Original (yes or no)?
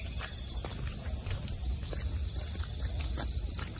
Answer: yes